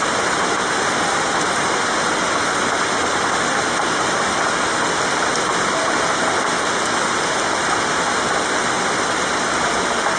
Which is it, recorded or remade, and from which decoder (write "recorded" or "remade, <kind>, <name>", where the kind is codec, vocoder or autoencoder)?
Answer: recorded